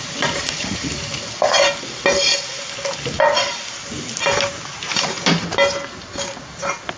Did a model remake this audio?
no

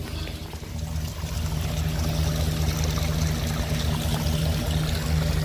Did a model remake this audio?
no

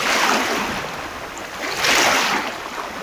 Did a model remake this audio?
no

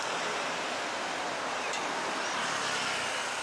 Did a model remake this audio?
no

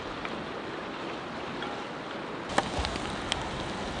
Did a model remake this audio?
no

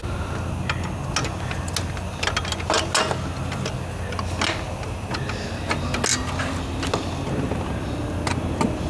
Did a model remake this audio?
no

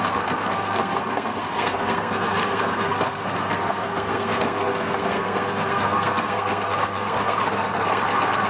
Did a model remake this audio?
yes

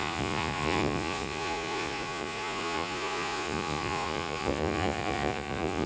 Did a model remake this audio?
yes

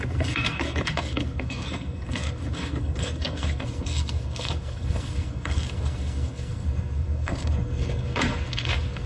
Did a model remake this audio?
yes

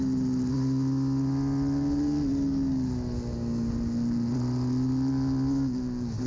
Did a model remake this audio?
no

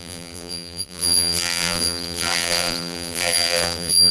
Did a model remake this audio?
yes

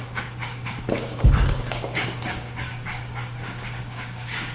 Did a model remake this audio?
yes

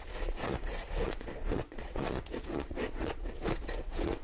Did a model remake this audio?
yes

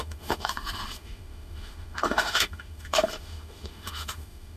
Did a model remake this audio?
yes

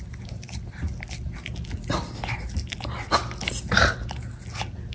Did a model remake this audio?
no